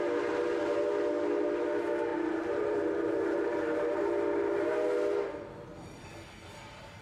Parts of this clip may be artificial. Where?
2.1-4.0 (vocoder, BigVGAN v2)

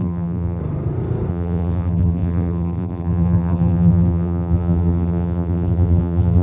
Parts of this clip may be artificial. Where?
0.0-0.6 (vocoder, BigVGAN v2); 1.3-6.4

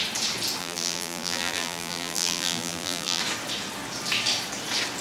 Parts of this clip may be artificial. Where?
0.6-3.2 (vocoder, BigVGAN v2)

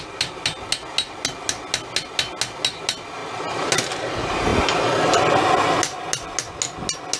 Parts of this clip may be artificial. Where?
none